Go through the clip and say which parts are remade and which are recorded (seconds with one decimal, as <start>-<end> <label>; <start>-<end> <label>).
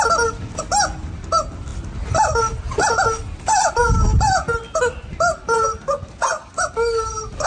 0.0-7.5 recorded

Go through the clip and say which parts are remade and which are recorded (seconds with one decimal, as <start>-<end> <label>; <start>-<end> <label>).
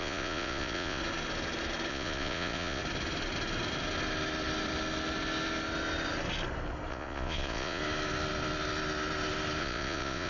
0.0-1.0 remade; 1.0-1.9 recorded; 1.9-2.8 remade; 2.8-6.9 recorded; 6.9-7.8 remade; 7.8-9.6 recorded; 9.6-10.3 remade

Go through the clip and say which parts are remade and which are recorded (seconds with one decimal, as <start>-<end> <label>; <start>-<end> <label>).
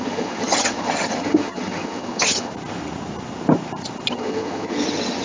0.0-2.5 remade; 2.5-4.1 recorded; 4.1-5.2 remade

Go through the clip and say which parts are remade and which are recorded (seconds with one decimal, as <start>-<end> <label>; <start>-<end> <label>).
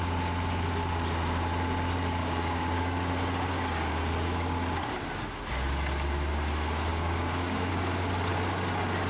0.0-2.2 recorded; 2.2-3.1 remade; 3.1-6.9 recorded; 6.9-7.7 remade; 7.7-9.1 recorded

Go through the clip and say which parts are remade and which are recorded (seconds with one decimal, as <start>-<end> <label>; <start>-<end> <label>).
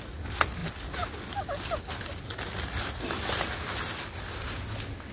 0.0-5.1 recorded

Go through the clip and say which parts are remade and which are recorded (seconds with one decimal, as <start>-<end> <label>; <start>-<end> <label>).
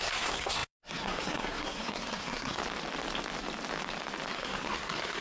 0.0-2.6 remade; 2.6-4.3 recorded; 4.3-5.2 remade